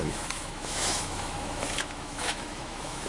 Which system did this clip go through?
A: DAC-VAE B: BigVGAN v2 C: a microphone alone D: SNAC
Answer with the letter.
A